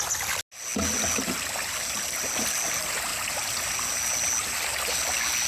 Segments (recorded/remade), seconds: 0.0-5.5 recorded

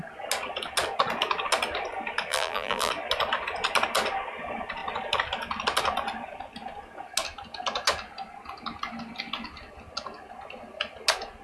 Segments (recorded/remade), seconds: 0.0-2.3 recorded; 2.3-2.9 remade; 2.9-11.4 recorded

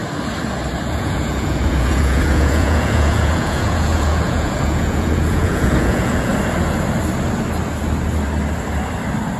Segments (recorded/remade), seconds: 0.0-0.8 recorded; 0.8-6.3 remade; 6.3-9.4 recorded

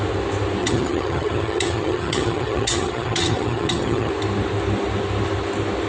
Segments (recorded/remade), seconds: 0.0-0.6 recorded; 0.6-4.1 remade; 4.1-5.9 recorded

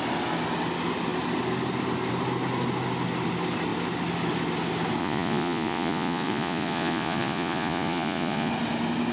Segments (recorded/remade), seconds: 0.0-5.0 recorded; 5.0-8.5 remade; 8.5-9.1 recorded